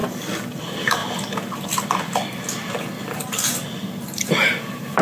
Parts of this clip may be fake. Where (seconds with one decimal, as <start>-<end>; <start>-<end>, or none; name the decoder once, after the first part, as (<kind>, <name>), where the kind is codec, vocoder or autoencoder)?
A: 0.6-1.0 (vocoder, BigVGAN v2); 4.0-5.0